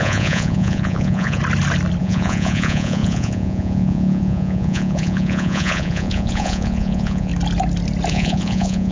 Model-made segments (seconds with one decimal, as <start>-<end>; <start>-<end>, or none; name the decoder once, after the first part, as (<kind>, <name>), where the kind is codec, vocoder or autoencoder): 0.0-1.4 (vocoder, Vocos); 2.0-7.3; 8.1-8.9